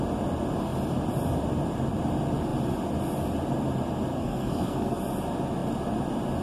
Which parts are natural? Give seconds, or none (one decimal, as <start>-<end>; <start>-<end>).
0.0-4.1; 5.0-6.4